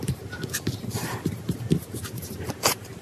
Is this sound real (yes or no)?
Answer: no